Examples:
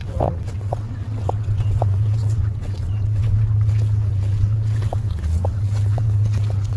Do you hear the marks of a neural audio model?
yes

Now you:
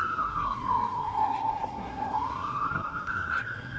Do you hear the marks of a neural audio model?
yes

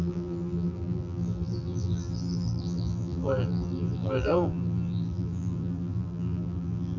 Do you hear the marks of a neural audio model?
yes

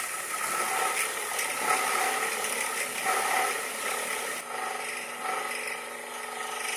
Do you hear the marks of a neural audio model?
no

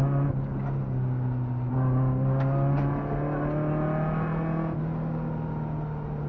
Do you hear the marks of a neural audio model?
no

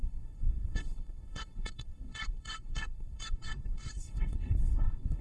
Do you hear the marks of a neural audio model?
yes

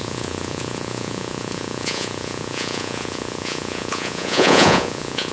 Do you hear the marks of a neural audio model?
yes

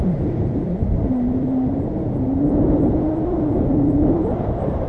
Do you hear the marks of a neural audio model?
yes